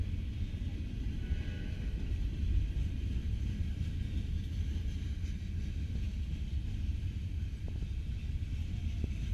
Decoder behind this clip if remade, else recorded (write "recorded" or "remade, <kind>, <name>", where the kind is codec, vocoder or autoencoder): recorded